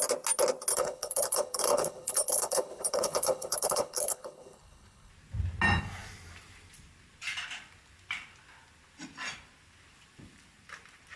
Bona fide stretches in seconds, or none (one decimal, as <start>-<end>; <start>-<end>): 0.0-0.7; 5.1-11.2